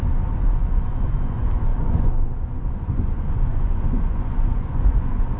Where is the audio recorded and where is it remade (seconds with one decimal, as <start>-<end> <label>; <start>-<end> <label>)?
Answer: 0.0-5.4 remade